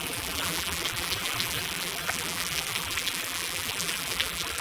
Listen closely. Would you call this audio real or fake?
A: fake